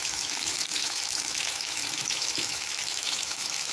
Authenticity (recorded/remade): remade